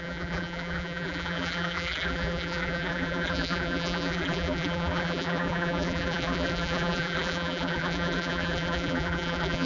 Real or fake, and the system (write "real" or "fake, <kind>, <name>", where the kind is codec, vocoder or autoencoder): fake, vocoder, BigVGAN v2